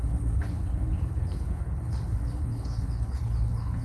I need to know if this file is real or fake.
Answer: fake